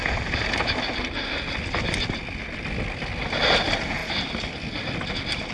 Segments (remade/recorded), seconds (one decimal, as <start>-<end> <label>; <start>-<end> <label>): 0.0-5.5 recorded